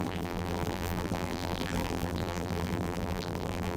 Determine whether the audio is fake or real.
fake